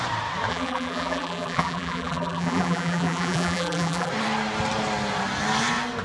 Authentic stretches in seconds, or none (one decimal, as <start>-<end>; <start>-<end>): 0.0-0.5; 4.1-6.0